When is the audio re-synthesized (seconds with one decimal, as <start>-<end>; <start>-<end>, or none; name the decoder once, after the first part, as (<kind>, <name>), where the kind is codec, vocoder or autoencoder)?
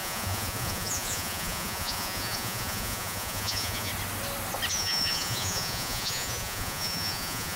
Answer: 0.0-3.9 (vocoder, Vocos); 4.7-7.6